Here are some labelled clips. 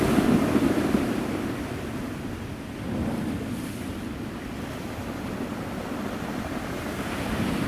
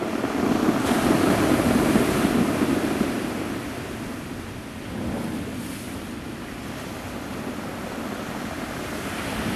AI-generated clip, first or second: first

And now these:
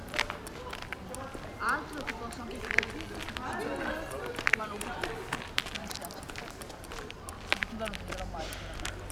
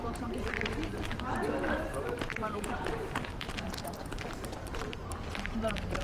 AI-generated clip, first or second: second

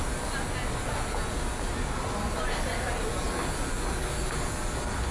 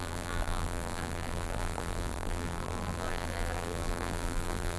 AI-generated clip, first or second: second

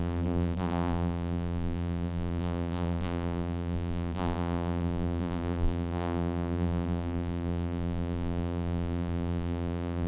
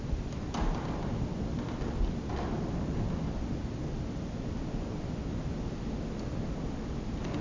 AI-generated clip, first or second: first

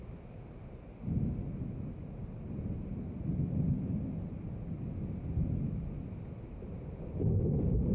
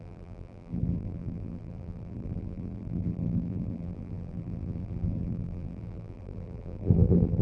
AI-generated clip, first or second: second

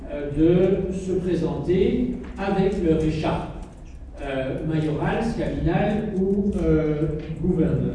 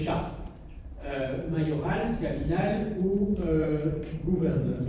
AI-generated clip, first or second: second